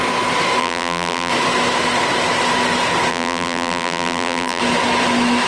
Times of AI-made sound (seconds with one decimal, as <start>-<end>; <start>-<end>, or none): 0.6-1.3; 3.1-4.6